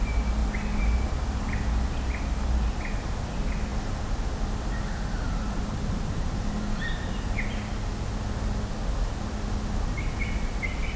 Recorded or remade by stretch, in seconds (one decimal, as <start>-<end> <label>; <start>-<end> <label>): 0.0-11.0 recorded